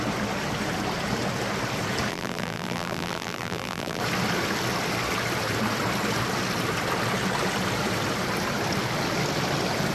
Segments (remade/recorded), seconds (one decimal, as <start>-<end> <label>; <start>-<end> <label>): 0.0-2.1 recorded; 2.1-4.0 remade; 4.0-9.9 recorded